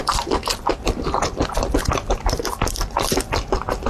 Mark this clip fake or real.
real